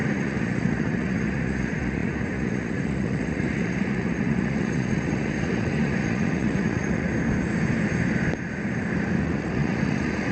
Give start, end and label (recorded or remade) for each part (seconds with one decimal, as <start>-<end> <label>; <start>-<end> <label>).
0.0-7.1 remade; 7.1-9.2 recorded; 9.2-10.3 remade